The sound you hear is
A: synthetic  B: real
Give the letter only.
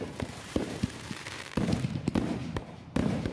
A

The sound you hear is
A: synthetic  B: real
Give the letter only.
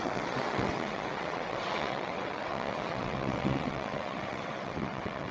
A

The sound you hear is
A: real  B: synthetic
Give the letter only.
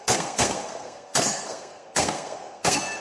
B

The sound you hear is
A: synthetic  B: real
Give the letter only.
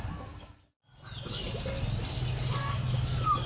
B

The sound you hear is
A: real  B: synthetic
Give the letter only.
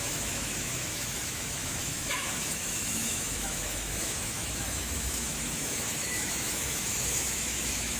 B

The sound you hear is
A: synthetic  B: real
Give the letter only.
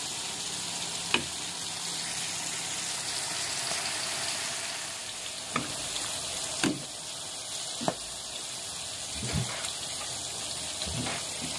B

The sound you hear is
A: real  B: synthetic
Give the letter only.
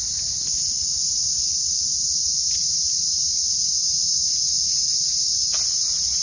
A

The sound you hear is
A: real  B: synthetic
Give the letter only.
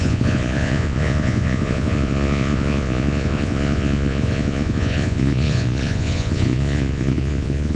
B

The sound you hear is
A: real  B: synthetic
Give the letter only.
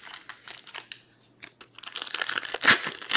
A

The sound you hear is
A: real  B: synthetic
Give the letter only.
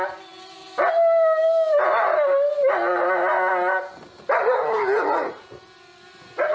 A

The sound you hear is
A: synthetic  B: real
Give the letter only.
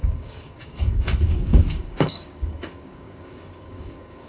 A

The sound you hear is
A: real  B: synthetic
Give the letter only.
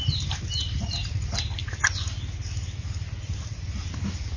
A